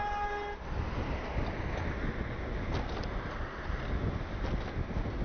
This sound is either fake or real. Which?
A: real